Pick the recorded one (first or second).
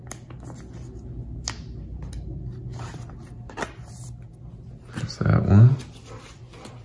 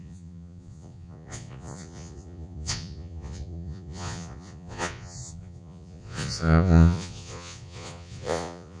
first